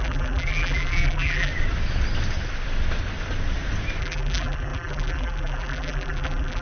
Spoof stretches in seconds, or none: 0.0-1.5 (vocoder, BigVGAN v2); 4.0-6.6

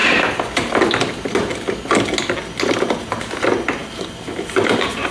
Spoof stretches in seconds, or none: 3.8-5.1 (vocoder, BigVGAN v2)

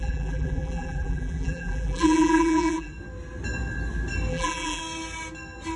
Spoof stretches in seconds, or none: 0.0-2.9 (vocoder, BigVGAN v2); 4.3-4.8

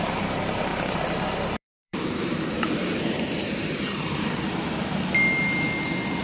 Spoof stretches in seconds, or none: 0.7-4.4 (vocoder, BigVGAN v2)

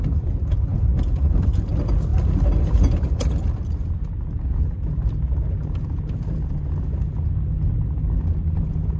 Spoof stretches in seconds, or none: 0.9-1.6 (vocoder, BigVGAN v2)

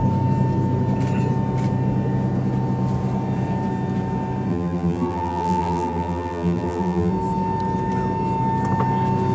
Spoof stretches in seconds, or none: 4.5-7.1 (vocoder, BigVGAN v2)

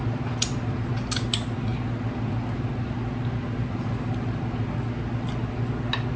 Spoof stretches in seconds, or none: none